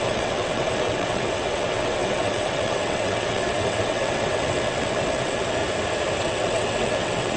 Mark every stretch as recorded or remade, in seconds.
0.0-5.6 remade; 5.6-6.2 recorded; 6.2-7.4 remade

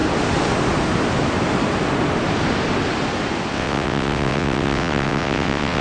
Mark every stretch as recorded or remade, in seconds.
0.0-3.5 recorded; 3.5-5.8 remade

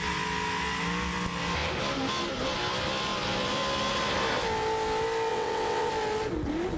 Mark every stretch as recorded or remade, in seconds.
0.0-5.3 recorded; 5.3-5.9 remade; 5.9-6.8 recorded

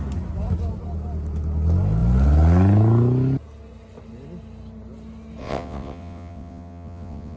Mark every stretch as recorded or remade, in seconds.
0.0-5.4 recorded; 5.4-7.4 remade

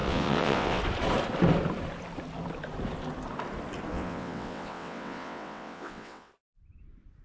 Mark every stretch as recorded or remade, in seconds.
0.0-0.8 remade; 0.8-3.9 recorded; 3.9-6.3 remade; 6.3-7.2 recorded

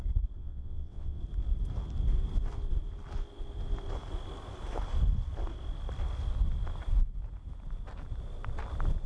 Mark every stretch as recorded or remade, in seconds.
0.0-0.4 recorded; 0.4-1.2 remade; 1.2-9.1 recorded

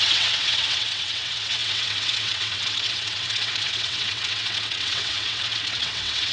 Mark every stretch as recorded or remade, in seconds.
0.0-6.3 remade

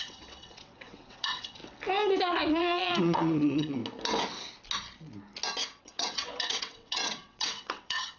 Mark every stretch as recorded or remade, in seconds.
0.0-1.6 remade; 1.6-2.2 recorded; 2.2-3.8 remade; 3.8-5.8 recorded; 5.8-8.2 remade